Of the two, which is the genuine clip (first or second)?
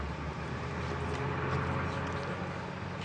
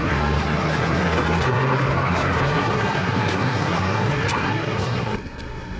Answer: first